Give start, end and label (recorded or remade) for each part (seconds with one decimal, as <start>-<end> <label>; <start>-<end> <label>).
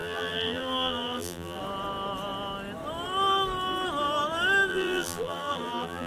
0.0-1.6 remade; 1.6-4.7 recorded; 4.7-6.1 remade